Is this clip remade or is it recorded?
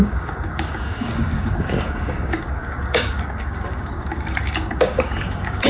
remade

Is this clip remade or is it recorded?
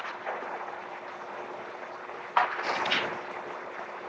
recorded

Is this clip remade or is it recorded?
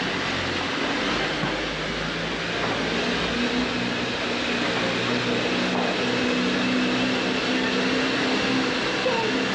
recorded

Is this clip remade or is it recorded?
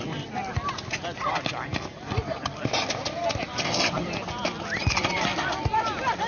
recorded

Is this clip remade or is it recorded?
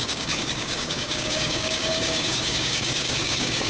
remade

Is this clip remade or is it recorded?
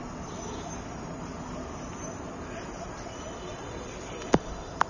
recorded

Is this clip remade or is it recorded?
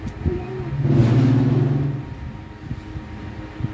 recorded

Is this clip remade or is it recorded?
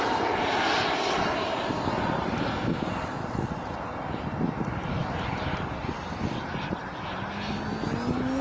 recorded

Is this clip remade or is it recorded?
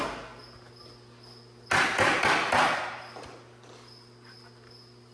recorded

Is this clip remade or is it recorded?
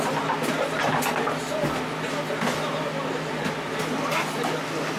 recorded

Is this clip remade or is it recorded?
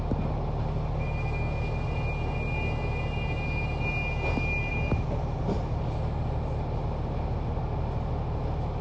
recorded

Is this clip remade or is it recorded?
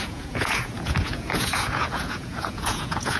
remade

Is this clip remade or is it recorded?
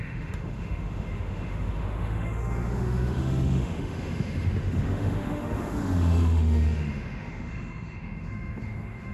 remade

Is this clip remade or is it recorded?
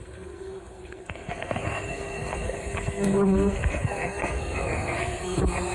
remade